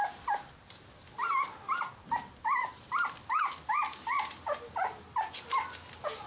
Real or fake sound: real